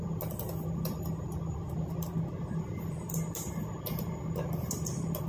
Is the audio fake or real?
real